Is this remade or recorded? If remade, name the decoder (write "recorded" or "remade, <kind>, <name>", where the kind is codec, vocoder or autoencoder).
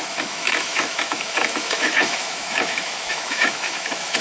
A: remade, autoencoder, DAC-VAE